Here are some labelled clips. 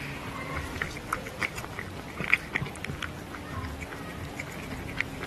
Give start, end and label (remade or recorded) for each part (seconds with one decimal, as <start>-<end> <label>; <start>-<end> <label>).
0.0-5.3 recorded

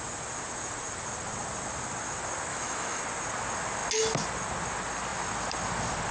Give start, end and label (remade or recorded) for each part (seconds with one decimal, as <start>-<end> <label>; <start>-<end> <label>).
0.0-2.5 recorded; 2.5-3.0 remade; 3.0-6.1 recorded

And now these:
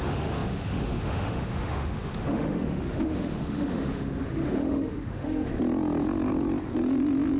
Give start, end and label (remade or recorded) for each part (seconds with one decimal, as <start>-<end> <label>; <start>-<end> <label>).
0.0-5.5 remade; 5.5-7.4 recorded